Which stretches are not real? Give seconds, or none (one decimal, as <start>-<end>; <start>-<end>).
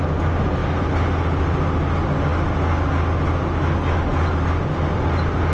none